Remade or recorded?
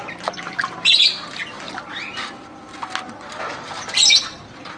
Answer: recorded